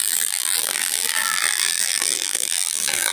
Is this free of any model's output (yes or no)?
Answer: no